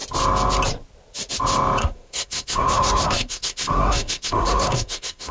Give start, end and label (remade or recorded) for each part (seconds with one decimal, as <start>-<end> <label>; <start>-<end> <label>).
0.0-1.8 recorded; 1.8-5.3 remade